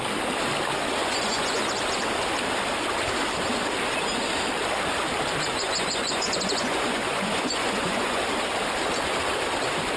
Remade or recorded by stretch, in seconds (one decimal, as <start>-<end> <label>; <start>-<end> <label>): 0.0-1.0 recorded; 1.0-1.6 remade; 1.6-5.5 recorded; 5.5-8.2 remade; 8.2-10.0 recorded